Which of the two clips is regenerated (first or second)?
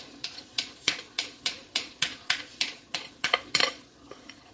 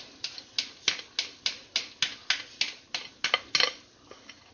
first